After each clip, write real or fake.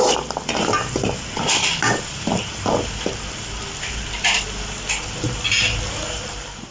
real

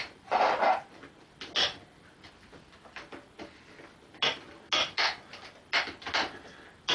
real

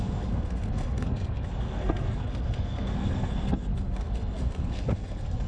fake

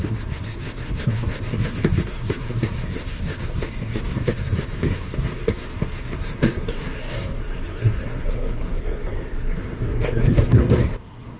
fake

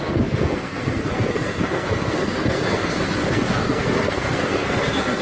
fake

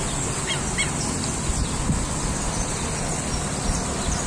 real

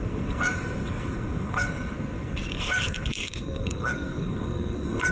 fake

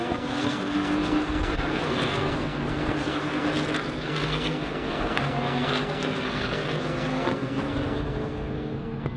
fake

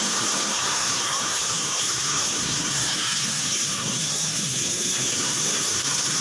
fake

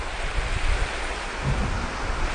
real